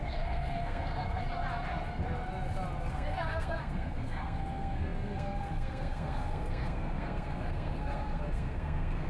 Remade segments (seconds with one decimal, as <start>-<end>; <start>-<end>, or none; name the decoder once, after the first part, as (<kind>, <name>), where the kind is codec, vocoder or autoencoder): 0.0-1.2 (codec, SNAC); 2.9-9.1